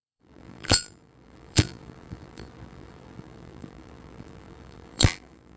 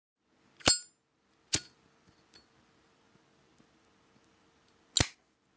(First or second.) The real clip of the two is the second